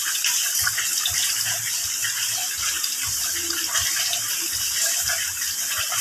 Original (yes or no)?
yes